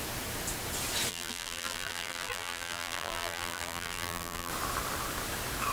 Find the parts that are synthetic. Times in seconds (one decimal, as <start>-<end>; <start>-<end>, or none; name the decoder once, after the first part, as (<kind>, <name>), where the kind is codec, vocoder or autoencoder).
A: 1.1-4.5 (vocoder, BigVGAN v2)